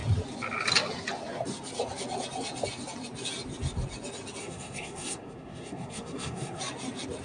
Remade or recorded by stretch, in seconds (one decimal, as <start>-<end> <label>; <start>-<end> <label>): 0.0-4.4 recorded; 4.4-6.6 remade; 6.6-7.2 recorded